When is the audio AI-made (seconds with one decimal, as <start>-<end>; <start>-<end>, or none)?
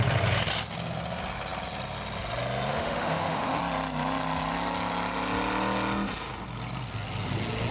2.7-3.6